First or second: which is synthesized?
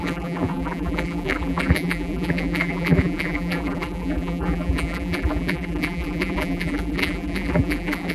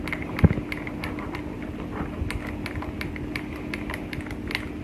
first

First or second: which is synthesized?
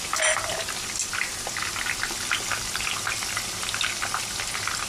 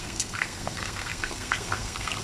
second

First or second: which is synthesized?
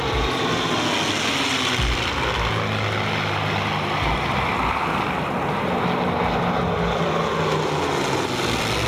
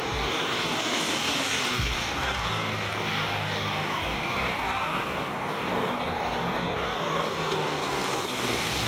second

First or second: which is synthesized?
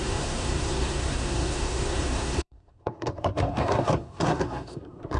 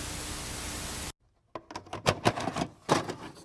first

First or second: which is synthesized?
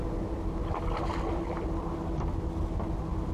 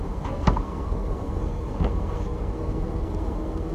second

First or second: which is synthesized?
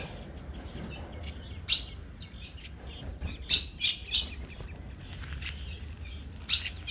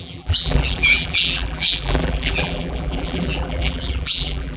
second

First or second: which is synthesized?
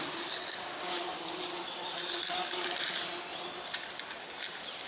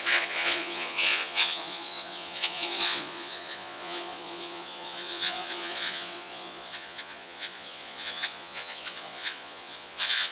second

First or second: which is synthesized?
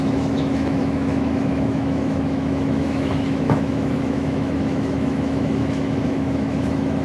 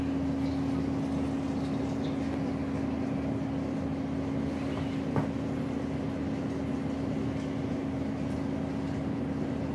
first